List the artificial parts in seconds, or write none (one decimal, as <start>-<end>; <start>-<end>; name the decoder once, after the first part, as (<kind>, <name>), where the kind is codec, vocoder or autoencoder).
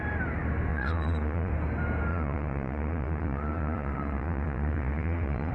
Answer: 0.7-1.5 (vocoder, Vocos); 2.1-5.5